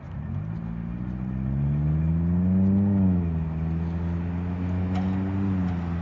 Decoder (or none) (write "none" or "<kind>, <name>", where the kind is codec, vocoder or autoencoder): none